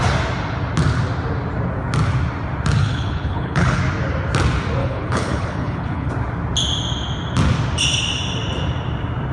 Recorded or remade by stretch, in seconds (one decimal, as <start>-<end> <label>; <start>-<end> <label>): 0.0-2.8 recorded; 2.8-3.8 remade; 3.8-4.8 recorded; 4.8-6.1 remade; 6.1-9.3 recorded